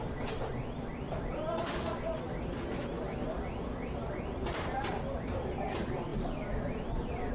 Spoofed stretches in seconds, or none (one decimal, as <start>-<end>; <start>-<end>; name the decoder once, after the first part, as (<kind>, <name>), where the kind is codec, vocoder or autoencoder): none